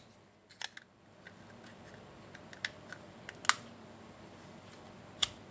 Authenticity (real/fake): real